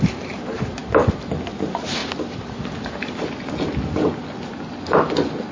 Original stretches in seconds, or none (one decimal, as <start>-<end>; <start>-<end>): 0.0-5.5